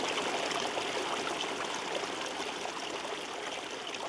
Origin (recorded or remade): recorded